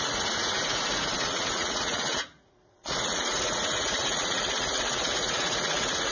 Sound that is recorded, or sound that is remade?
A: remade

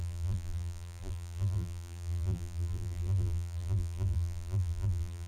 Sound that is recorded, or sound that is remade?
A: remade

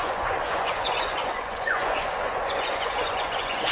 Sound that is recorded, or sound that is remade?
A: remade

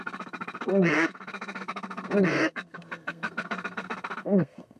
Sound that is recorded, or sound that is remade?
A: remade